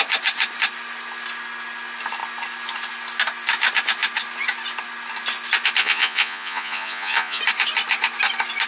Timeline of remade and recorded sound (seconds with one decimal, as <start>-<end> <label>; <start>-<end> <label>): 0.0-5.8 recorded; 5.8-7.4 remade; 7.4-8.7 recorded